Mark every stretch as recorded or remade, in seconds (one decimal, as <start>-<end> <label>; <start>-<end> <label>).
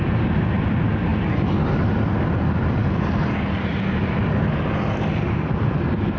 0.0-6.2 recorded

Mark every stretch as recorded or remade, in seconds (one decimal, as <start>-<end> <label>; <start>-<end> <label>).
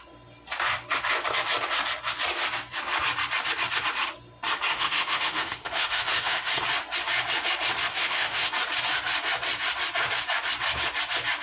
0.0-4.7 recorded; 4.7-6.5 remade; 6.5-7.9 recorded; 7.9-8.5 remade; 8.5-11.4 recorded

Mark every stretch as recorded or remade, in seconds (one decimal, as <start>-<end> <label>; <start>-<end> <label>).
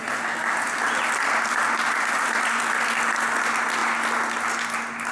0.0-5.1 recorded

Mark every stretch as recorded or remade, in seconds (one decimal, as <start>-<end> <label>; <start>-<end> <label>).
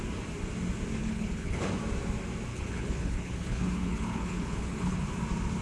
0.0-1.0 recorded; 1.0-1.8 remade; 1.8-2.5 recorded; 2.5-5.1 remade; 5.1-5.6 recorded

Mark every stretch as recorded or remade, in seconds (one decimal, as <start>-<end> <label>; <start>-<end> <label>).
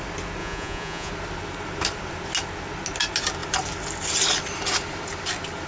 0.0-0.4 recorded; 0.4-1.1 remade; 1.1-5.7 recorded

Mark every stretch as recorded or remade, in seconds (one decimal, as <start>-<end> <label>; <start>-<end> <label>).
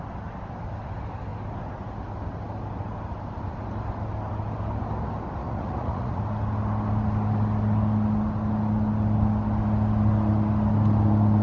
0.0-5.4 recorded; 5.4-6.2 remade; 6.2-11.4 recorded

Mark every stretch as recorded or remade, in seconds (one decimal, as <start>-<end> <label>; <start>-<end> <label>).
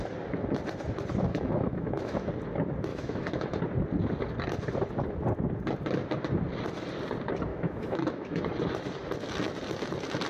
0.0-1.3 recorded; 1.3-2.3 remade; 2.3-2.9 recorded; 2.9-3.6 remade; 3.6-7.5 recorded; 7.5-8.4 remade; 8.4-10.3 recorded